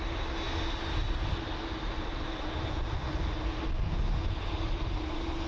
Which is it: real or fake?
real